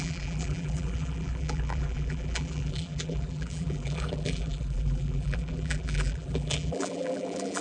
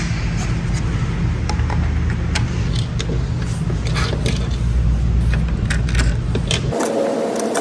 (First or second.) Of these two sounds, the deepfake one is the first